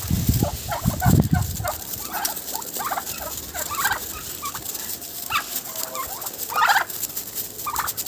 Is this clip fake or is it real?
real